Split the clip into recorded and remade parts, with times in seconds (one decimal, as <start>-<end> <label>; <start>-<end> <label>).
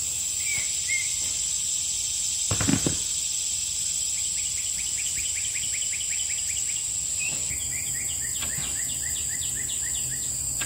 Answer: 0.0-10.7 recorded